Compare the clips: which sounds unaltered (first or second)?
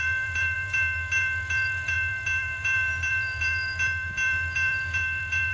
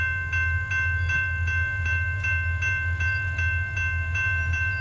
second